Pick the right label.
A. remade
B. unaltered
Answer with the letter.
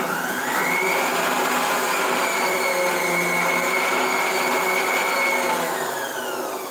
B